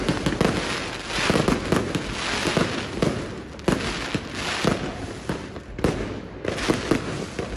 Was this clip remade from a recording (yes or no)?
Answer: no